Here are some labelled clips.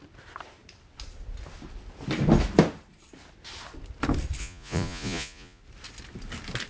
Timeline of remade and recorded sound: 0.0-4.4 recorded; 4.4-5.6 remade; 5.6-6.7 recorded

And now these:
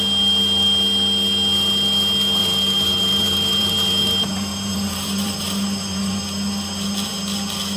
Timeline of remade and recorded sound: 0.0-2.4 recorded; 2.4-6.2 remade; 6.2-7.8 recorded

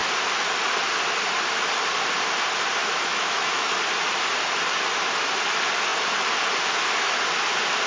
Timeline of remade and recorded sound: 0.0-2.8 recorded; 2.8-3.7 remade; 3.7-7.9 recorded